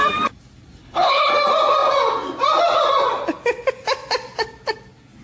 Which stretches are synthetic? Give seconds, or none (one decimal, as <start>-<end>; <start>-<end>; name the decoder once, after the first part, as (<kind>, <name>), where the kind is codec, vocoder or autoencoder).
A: 0.8-1.3 (codec, HILCodec)